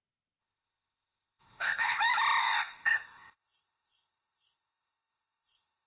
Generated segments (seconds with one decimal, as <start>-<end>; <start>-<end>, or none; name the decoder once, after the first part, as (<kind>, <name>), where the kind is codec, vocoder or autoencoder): 0.4-2.0 (codec, ZipCodec); 2.4-5.9